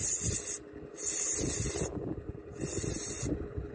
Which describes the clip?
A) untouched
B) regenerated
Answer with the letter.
A